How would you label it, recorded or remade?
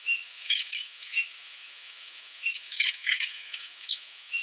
remade